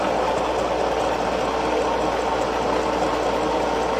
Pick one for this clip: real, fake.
real